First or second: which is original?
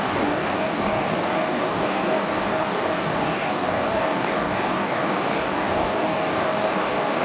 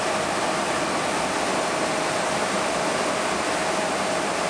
second